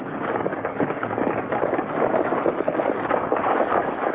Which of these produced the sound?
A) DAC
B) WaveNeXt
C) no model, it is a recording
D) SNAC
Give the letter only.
A